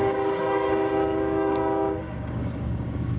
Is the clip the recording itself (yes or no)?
no